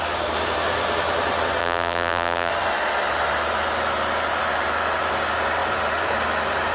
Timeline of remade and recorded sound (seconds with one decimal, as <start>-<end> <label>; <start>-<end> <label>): 0.0-1.6 recorded; 1.6-2.5 remade; 2.5-6.7 recorded